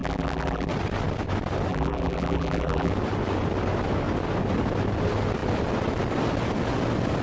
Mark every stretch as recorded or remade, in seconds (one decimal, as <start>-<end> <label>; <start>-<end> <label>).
0.0-0.7 remade; 0.7-1.7 recorded; 1.7-2.9 remade; 2.9-7.2 recorded